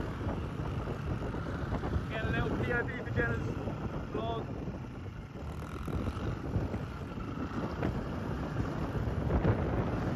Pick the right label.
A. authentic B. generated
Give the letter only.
A